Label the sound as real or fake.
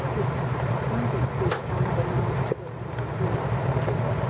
fake